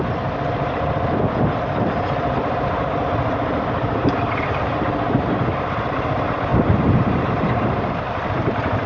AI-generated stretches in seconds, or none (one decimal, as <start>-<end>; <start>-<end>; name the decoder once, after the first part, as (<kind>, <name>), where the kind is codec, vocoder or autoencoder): 4.0-5.4 (vocoder, BigVGAN v2); 6.5-7.3

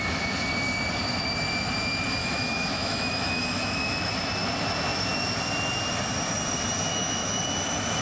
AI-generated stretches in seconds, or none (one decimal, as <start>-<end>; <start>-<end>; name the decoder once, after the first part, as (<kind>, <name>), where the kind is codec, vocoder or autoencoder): 2.2-4.1 (autoencoder, DAC-VAE); 6.9-7.4